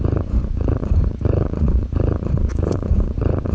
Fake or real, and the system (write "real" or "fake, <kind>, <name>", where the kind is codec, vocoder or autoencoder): fake, vocoder, Vocos